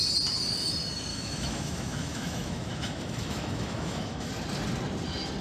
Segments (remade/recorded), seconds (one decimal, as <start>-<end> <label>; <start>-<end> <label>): 0.0-1.1 recorded; 1.1-4.3 remade; 4.3-5.4 recorded